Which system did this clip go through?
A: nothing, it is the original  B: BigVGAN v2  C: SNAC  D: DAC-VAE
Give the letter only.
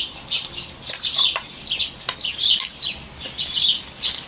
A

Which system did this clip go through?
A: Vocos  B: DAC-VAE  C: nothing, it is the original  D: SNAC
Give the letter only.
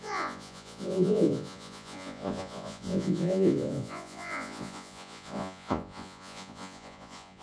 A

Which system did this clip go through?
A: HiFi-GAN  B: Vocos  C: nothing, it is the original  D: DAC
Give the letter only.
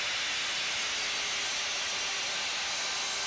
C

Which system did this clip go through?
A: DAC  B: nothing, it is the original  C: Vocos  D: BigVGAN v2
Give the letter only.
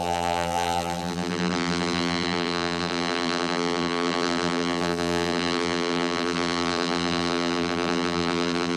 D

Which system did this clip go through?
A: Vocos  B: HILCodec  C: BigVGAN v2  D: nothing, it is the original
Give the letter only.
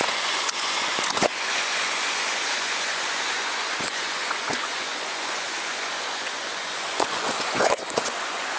A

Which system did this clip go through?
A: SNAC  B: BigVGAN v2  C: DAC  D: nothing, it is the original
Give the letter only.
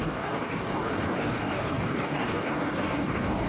C